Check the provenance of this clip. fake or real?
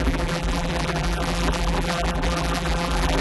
fake